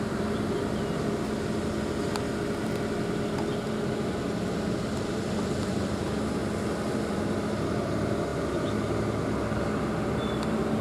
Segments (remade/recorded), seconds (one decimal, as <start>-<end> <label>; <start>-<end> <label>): 0.0-10.8 recorded